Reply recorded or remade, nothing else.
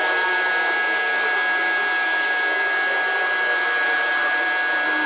recorded